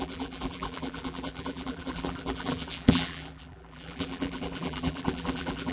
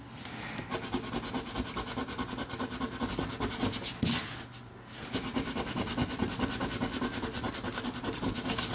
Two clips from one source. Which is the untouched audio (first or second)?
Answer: second